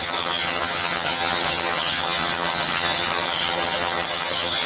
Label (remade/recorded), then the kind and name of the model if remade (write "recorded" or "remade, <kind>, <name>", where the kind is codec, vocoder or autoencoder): remade, vocoder, HiFi-GAN